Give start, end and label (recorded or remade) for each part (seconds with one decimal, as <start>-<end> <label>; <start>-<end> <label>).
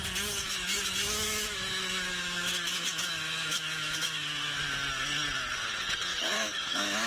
0.0-0.4 recorded; 0.4-4.7 remade; 4.7-6.1 recorded; 6.1-7.1 remade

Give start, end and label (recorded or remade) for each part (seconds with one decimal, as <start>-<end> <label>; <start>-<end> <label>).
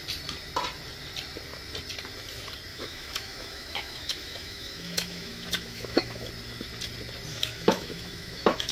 0.0-2.7 recorded; 2.7-6.3 remade; 6.3-7.3 recorded; 7.3-8.7 remade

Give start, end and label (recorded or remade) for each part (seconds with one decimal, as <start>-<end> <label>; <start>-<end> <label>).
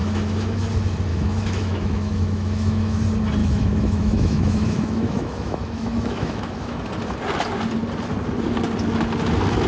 0.0-0.6 remade; 0.6-1.1 recorded; 1.1-3.0 remade; 3.0-3.4 recorded; 3.4-6.9 remade; 6.9-9.7 recorded